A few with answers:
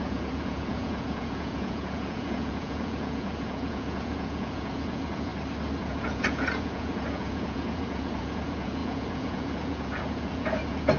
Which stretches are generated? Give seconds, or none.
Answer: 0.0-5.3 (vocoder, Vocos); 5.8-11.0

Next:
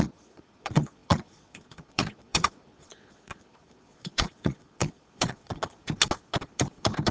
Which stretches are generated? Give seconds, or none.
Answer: 0.0-5.8 (vocoder, Vocos)

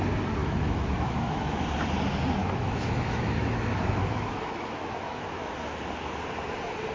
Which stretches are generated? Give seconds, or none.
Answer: 0.4-1.7 (autoencoder, DAC-VAE); 2.4-5.8

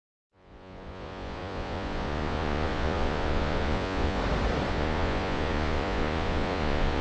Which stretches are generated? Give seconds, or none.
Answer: 0.0-4.2 (vocoder, Vocos); 4.7-7.0

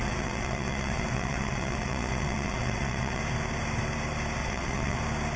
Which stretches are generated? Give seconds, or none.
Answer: 0.0-3.2 (vocoder, WaveNeXt); 4.4-5.0

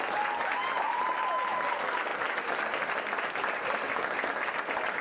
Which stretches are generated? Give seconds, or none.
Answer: none

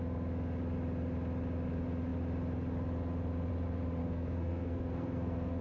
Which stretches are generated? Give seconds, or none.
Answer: 4.0-5.6 (codec, SNAC)

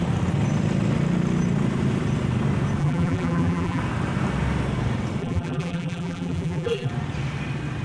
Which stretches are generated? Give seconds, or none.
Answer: 2.8-3.8 (vocoder, BigVGAN v2); 5.2-6.9